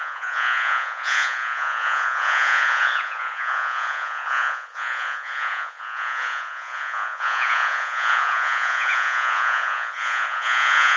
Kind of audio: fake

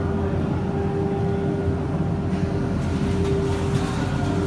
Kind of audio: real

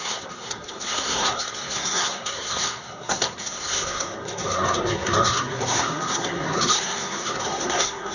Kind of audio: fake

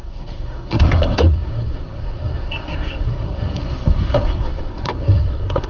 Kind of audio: fake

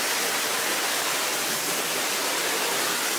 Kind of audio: real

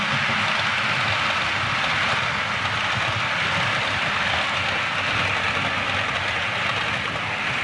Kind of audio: real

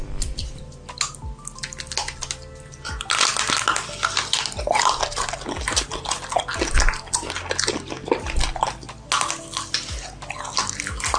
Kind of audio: real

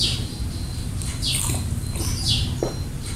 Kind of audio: fake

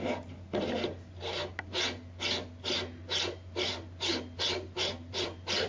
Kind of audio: real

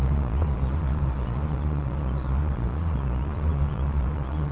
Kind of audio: fake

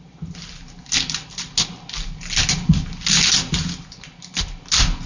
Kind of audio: real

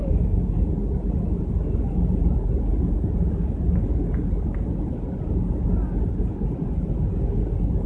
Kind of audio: real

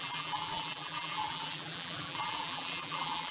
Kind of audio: fake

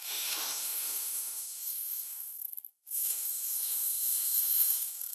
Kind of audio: fake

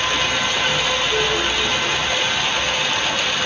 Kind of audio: real